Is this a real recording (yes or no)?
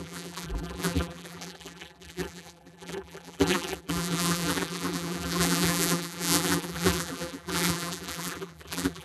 no